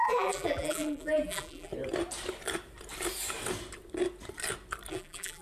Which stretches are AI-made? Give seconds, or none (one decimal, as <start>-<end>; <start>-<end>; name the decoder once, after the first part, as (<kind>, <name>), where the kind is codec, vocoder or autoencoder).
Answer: 0.0-1.7 (vocoder, BigVGAN v2); 4.9-5.4